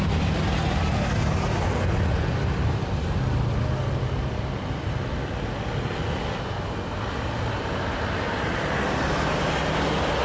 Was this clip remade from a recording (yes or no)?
no